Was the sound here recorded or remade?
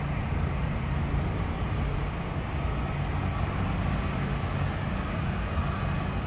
recorded